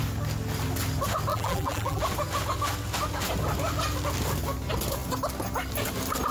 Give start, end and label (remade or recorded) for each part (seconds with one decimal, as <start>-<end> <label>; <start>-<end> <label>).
0.0-1.3 recorded; 1.3-2.0 remade; 2.0-6.3 recorded